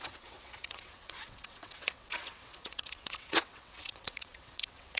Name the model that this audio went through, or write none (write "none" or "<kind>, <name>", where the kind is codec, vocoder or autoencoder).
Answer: vocoder, WaveNeXt